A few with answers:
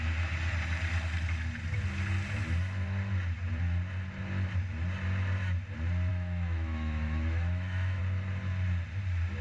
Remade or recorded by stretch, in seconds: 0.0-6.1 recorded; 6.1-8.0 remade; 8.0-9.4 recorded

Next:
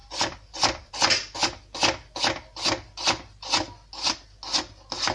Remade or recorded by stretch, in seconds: 0.0-0.9 remade; 0.9-5.1 recorded

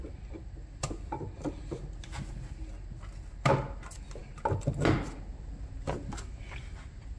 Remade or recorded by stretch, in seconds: 0.0-7.2 recorded

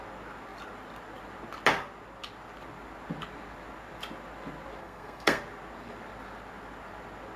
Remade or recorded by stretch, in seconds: 0.0-4.8 recorded; 4.8-5.4 remade; 5.4-7.4 recorded

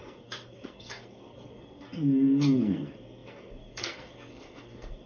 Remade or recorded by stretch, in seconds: 0.0-5.1 remade

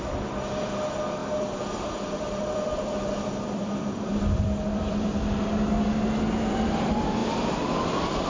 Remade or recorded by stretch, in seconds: 0.0-1.2 recorded; 1.2-5.3 remade; 5.3-7.2 recorded; 7.2-8.3 remade

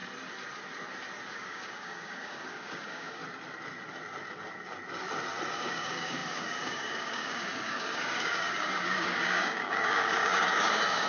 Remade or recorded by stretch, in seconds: 0.0-1.3 recorded; 1.3-3.2 remade; 3.2-5.5 recorded; 5.5-11.1 remade

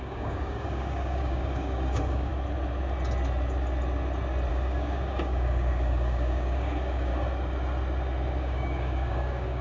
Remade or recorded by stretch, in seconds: 0.0-2.3 remade; 2.3-4.5 recorded; 4.5-7.1 remade; 7.1-8.4 recorded; 8.4-9.6 remade